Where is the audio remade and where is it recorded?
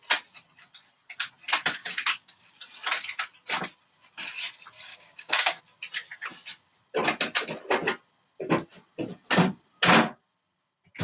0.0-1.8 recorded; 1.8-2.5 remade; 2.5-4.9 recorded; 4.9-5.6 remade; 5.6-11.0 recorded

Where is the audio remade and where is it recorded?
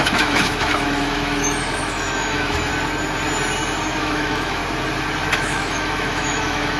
0.0-2.7 remade; 2.7-4.0 recorded; 4.0-4.6 remade; 4.6-5.3 recorded; 5.3-6.8 remade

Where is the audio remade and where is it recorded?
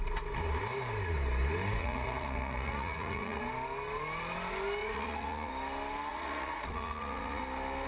0.0-1.8 recorded; 1.8-3.4 remade; 3.4-4.8 recorded; 4.8-5.5 remade; 5.5-6.1 recorded; 6.1-7.4 remade; 7.4-7.9 recorded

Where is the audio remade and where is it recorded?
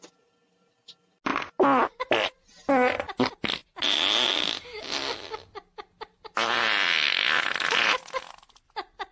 0.0-9.1 recorded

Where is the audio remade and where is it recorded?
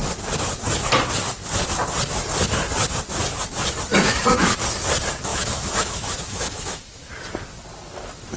0.0-3.9 recorded; 3.9-4.5 remade; 4.5-5.3 recorded; 5.3-7.1 remade; 7.1-8.4 recorded